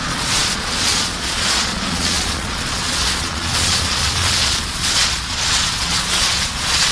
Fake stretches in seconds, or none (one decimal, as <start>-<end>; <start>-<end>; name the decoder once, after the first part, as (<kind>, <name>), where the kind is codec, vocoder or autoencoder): 0.0-6.9 (vocoder, Vocos)